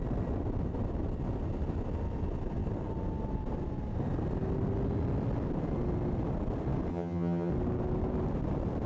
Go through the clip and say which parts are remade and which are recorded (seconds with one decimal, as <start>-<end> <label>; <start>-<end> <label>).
0.0-6.9 recorded; 6.9-7.5 remade; 7.5-8.9 recorded

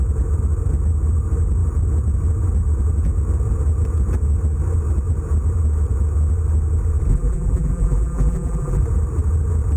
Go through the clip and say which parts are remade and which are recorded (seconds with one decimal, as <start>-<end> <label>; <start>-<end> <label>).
0.0-7.1 recorded; 7.1-8.8 remade; 8.8-9.8 recorded

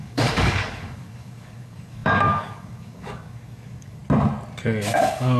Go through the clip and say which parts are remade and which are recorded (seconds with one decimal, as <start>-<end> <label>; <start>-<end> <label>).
0.0-4.0 remade; 4.0-5.0 recorded; 5.0-5.4 remade

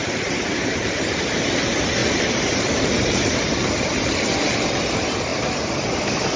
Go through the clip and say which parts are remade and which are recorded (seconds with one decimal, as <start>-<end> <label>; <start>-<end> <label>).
0.0-0.9 remade; 0.9-2.0 recorded; 2.0-3.5 remade; 3.5-6.4 recorded

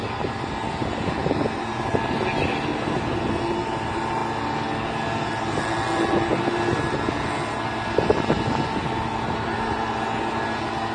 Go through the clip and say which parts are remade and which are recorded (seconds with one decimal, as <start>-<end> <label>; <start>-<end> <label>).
0.0-10.9 recorded

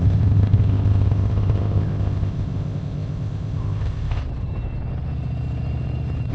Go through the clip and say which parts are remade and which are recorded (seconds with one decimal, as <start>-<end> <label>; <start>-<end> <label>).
0.0-4.2 remade; 4.2-6.3 recorded